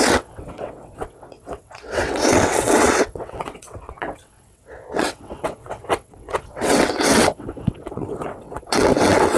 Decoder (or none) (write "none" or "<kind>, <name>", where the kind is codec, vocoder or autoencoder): vocoder, WaveNeXt